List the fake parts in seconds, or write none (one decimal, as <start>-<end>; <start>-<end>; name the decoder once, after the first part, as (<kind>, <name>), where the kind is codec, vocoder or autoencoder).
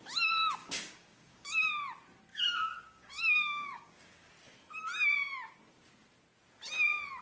0.6-1.7 (codec, DAC); 2.3-4.3